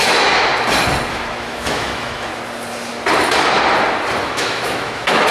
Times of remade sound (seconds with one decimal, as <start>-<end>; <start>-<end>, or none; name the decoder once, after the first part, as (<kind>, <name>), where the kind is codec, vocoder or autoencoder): 0.0-0.5 (autoencoder, DAC-VAE); 1.1-2.3; 4.2-5.3